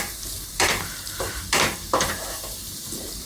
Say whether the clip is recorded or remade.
remade